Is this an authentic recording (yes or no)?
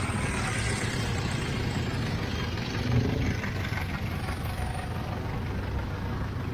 yes